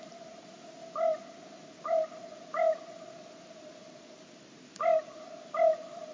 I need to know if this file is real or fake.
real